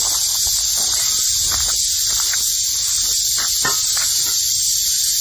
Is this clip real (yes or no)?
yes